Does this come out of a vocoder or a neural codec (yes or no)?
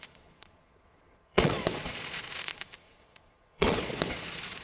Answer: yes